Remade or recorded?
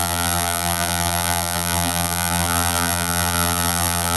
remade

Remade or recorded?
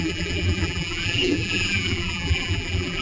remade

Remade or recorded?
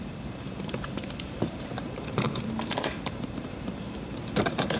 remade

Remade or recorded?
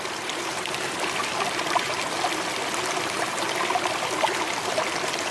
remade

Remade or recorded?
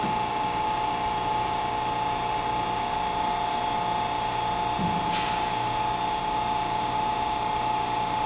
recorded